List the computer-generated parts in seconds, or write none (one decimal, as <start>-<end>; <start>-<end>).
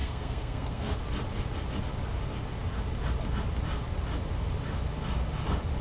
0.0-1.0